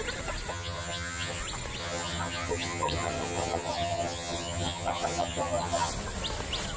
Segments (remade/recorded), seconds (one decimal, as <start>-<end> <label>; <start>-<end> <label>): 0.0-0.5 recorded; 0.5-1.4 remade; 1.4-1.8 recorded; 1.8-5.9 remade; 5.9-6.8 recorded